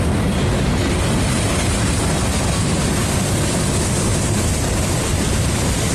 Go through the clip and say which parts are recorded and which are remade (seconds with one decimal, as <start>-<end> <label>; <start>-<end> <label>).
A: 0.0-4.1 recorded; 4.1-5.9 remade